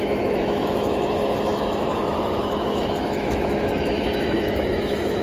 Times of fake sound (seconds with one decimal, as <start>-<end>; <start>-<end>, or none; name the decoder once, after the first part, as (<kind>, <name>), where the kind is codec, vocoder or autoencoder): 0.0-5.2 (autoencoder, DAC-VAE)